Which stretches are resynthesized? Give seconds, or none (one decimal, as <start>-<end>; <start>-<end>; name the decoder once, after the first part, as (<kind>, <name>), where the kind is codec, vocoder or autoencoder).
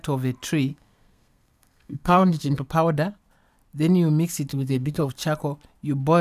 0.7-2.7 (codec, SNAC); 4.5-5.1